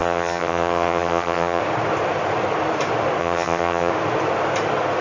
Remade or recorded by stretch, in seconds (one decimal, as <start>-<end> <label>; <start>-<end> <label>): 0.0-1.6 remade; 1.6-3.2 recorded; 3.2-3.9 remade; 3.9-5.0 recorded